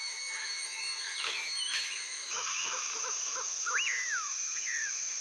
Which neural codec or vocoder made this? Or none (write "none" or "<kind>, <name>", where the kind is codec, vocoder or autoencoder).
autoencoder, DAC-VAE